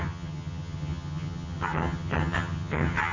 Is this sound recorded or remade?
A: remade